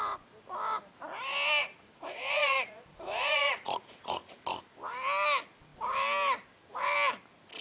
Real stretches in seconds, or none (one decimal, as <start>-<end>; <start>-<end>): 0.0-1.6; 4.4-7.6